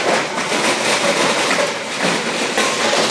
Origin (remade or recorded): remade